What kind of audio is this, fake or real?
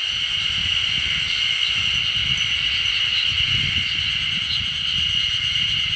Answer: real